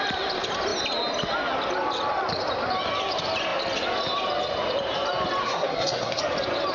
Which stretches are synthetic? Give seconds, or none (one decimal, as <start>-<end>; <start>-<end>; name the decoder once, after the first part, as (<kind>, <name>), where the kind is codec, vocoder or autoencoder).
5.4-6.2 (codec, SNAC)